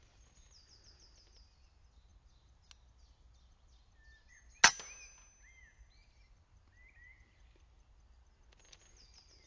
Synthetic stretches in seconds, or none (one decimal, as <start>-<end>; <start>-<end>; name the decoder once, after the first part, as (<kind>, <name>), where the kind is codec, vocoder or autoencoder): none